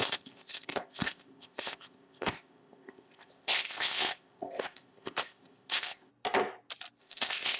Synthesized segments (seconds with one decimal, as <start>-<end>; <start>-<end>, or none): 0.0-6.1; 7.0-7.6